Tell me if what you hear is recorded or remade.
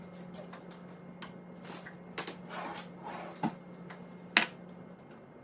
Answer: recorded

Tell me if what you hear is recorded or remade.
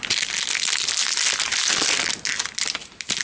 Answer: recorded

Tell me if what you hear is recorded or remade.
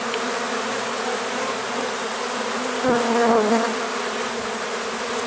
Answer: recorded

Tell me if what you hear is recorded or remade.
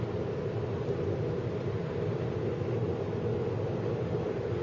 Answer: recorded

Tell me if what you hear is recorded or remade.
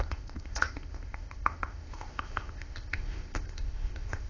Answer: remade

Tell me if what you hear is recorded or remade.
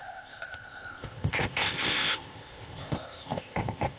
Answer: remade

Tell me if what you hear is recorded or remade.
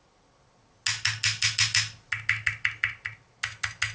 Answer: recorded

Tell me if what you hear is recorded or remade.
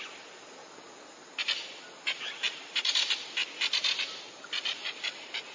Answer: recorded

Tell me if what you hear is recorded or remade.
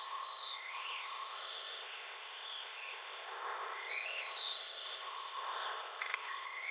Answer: remade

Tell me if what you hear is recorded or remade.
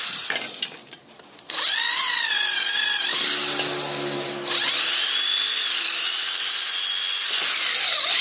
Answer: recorded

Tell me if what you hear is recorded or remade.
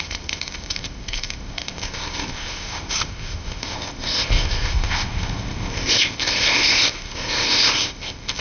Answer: remade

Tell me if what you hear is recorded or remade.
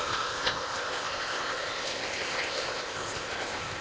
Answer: remade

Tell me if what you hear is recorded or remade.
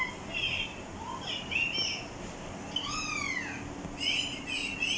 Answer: recorded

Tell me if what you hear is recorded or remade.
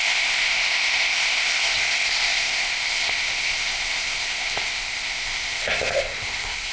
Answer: remade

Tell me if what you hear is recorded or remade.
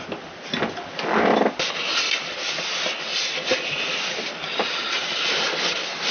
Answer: recorded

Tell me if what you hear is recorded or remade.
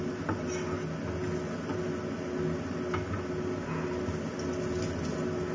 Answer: recorded